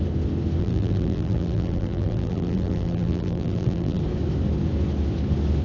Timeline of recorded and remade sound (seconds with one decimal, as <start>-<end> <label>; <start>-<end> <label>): 0.0-0.6 recorded; 0.6-4.0 remade; 4.0-5.6 recorded